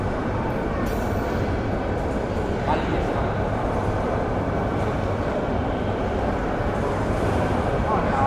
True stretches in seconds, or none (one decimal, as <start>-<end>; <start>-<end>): 0.0-8.3